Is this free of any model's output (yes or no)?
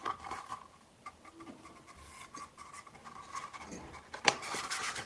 yes